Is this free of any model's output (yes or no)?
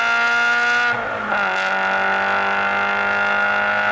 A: yes